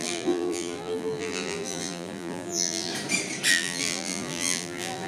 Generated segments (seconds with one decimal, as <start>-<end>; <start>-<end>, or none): 0.0-2.9; 3.5-5.1